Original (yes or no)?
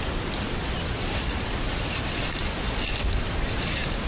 yes